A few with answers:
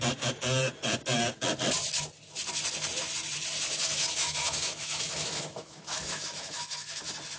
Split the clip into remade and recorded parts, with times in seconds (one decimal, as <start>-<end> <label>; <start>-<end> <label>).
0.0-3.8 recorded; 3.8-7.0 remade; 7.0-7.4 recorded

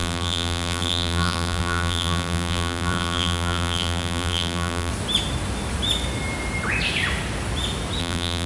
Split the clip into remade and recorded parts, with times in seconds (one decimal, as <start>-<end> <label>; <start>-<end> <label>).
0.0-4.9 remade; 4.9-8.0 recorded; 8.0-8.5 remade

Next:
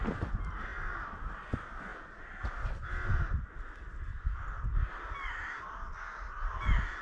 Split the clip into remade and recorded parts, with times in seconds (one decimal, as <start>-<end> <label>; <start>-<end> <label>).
0.0-7.0 recorded